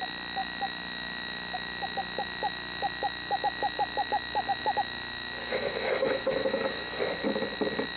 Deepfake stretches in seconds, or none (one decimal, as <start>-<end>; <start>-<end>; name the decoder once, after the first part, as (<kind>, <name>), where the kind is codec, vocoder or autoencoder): 5.4-7.0 (autoencoder, DAC-VAE)